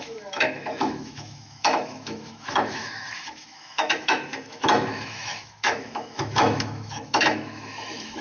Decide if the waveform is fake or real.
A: fake